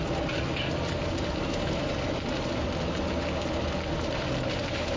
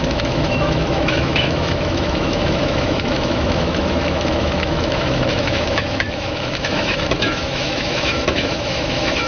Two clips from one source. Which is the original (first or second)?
first